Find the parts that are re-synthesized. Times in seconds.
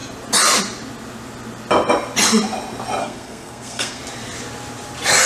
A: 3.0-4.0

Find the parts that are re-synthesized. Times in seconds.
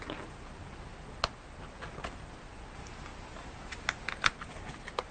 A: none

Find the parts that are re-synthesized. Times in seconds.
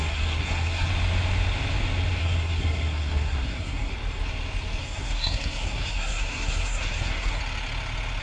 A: 0.0-0.9; 2.2-3.9; 4.8-7.4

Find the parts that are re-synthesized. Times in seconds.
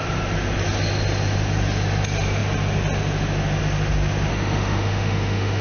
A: 4.3-5.6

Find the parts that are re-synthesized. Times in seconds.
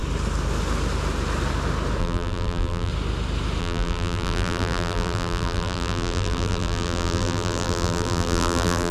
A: 2.0-2.9; 3.6-8.9